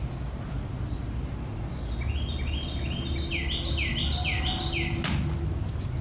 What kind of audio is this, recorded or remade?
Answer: recorded